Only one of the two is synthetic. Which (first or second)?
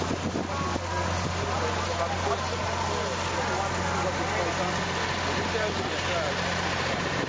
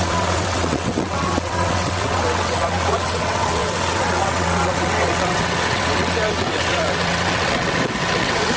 second